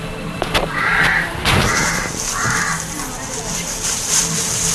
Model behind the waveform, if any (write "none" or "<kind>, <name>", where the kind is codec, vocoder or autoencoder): vocoder, BigVGAN v2